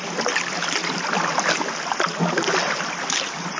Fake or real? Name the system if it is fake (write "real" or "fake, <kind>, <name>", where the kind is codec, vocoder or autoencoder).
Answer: real